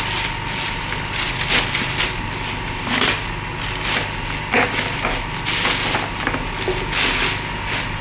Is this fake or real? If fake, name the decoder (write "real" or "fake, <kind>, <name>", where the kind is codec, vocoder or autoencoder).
real